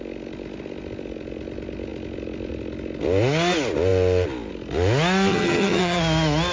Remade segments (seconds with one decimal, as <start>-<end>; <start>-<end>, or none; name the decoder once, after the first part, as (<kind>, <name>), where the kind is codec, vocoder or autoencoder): 5.3-6.0 (vocoder, HiFi-GAN)